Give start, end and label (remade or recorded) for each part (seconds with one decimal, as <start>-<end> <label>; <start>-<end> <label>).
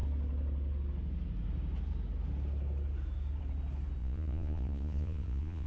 0.0-4.0 recorded; 4.0-5.7 remade